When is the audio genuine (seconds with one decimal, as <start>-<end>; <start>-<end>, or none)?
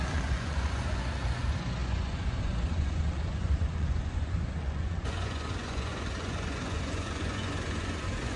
none